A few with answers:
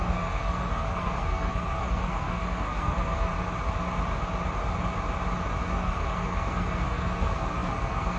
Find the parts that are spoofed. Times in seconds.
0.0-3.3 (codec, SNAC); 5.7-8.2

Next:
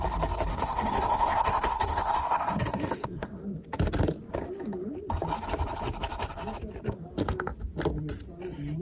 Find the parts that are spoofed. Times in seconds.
0.5-3.4 (codec, SNAC)

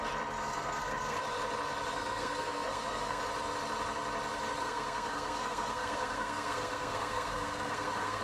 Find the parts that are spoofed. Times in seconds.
0.4-1.2 (codec, SNAC); 1.9-3.2; 4.6-8.2

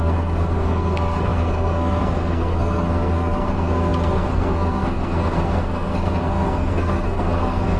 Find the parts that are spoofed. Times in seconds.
0.0-7.8 (codec, SNAC)

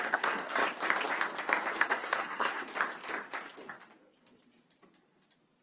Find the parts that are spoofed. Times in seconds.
0.0-0.6 (codec, SNAC); 1.8-2.7